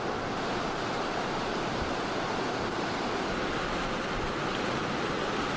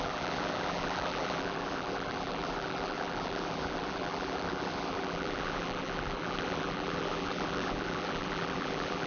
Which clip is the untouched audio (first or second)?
first